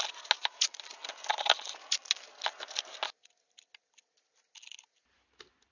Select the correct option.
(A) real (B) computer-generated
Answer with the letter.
A